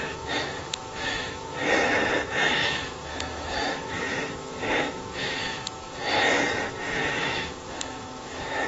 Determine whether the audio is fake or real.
fake